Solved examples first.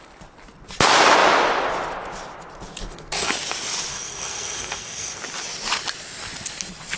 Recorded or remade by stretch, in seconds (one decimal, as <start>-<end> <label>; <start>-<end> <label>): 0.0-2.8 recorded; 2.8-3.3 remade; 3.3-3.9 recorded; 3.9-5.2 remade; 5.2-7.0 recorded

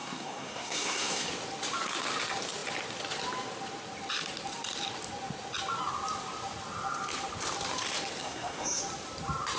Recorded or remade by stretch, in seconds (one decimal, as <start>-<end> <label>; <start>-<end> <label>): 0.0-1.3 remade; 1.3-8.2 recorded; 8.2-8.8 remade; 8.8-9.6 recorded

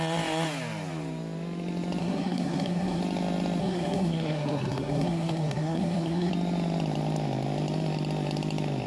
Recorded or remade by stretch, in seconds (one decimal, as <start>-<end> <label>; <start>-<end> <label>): 0.0-2.0 recorded; 2.0-3.0 remade; 3.0-3.6 recorded; 3.6-6.3 remade; 6.3-8.9 recorded

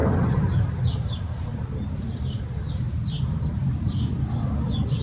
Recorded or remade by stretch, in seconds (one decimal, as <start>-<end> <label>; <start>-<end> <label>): 0.0-0.6 remade; 0.6-1.5 recorded; 1.5-2.5 remade; 2.5-3.6 recorded; 3.6-4.2 remade; 4.2-5.0 recorded

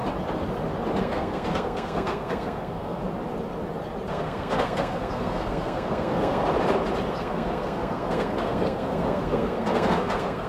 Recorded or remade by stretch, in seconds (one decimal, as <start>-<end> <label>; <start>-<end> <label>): 0.0-1.0 recorded; 1.0-3.0 remade; 3.0-4.1 recorded; 4.1-6.4 remade; 6.4-7.1 recorded; 7.1-10.5 remade

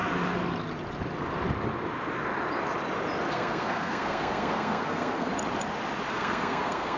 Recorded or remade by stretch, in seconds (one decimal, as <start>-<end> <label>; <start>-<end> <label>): 0.0-3.3 recorded; 3.3-5.3 remade; 5.3-6.1 recorded; 6.1-7.0 remade

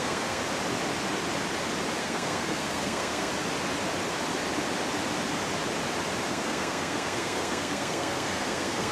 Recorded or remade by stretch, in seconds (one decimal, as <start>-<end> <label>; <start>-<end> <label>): 0.0-0.4 remade; 0.4-2.0 recorded; 2.0-3.3 remade; 3.3-6.3 recorded; 6.3-8.9 remade